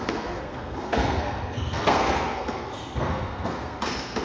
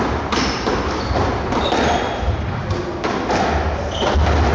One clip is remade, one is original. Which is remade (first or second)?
first